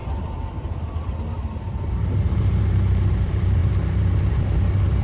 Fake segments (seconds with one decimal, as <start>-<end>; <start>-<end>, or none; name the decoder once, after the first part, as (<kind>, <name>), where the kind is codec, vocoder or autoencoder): 1.7-5.0 (vocoder, BigVGAN v2)